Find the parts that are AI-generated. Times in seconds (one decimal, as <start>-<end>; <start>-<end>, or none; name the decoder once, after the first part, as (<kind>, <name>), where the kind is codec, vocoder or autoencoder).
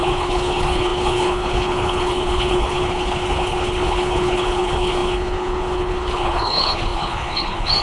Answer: 0.0-7.8 (codec, HILCodec)